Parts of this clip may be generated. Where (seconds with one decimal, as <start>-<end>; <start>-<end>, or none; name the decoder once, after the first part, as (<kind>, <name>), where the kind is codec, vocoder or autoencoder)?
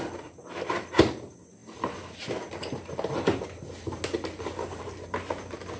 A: none